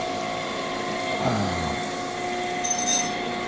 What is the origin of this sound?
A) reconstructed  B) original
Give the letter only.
B